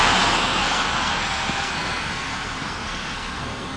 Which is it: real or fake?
fake